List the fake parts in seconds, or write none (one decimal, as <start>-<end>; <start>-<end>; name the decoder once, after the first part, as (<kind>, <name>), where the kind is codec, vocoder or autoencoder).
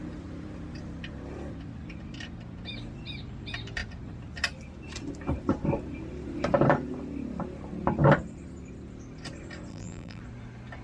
9.7-10.2 (vocoder, BigVGAN v2)